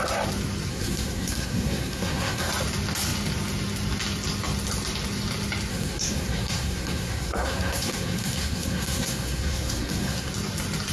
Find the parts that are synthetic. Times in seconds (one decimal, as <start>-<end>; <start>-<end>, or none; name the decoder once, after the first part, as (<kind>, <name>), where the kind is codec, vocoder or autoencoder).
0.7-2.5 (codec, SNAC); 5.7-10.3